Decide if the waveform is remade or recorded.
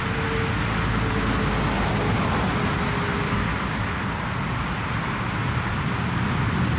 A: recorded